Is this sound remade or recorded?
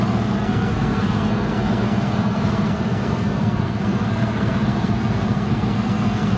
remade